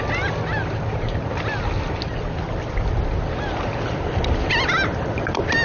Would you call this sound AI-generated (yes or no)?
no